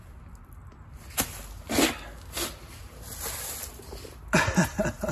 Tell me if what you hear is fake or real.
real